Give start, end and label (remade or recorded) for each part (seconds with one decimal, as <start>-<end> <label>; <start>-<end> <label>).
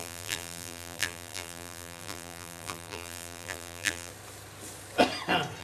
0.0-4.1 remade; 4.1-5.6 recorded